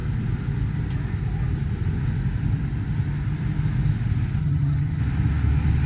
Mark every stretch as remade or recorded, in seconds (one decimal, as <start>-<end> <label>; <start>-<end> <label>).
0.0-4.4 recorded; 4.4-5.0 remade; 5.0-5.9 recorded

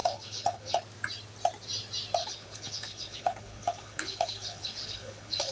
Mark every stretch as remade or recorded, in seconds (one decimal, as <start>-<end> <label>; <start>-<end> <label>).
0.0-0.8 remade; 0.8-2.2 recorded; 2.2-5.5 remade

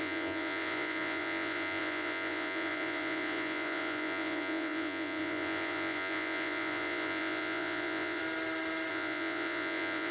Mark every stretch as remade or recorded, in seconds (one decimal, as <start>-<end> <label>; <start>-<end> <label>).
0.0-8.2 remade; 8.2-8.9 recorded; 8.9-10.1 remade